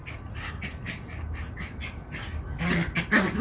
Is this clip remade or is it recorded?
recorded